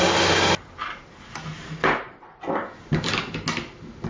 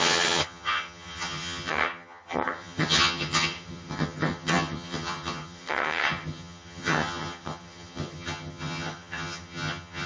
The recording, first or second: first